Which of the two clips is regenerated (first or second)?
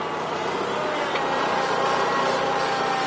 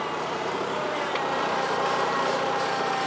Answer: second